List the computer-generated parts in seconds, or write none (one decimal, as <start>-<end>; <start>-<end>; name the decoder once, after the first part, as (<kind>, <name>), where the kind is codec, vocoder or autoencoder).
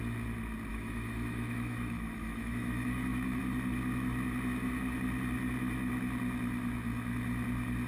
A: 0.7-3.4 (autoencoder, DAC-VAE)